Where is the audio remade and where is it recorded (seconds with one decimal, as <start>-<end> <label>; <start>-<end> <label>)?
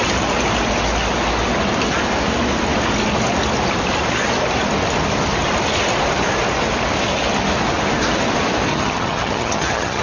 0.0-8.7 recorded; 8.7-10.0 remade